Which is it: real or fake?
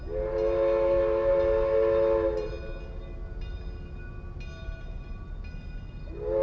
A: real